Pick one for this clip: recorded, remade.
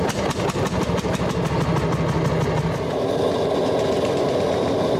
recorded